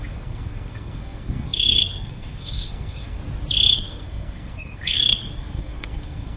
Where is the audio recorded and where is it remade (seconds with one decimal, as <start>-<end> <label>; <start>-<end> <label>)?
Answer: 0.0-3.2 remade; 3.2-3.7 recorded; 3.7-6.4 remade